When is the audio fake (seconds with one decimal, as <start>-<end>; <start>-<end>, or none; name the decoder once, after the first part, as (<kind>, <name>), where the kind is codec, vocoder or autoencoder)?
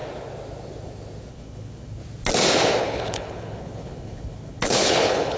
1.3-2.0 (codec, HILCodec); 2.8-5.4